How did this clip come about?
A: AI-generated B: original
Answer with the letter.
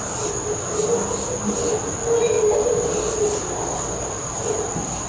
B